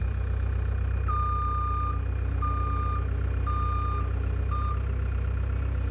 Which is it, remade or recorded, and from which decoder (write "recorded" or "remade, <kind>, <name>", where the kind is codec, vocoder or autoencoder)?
recorded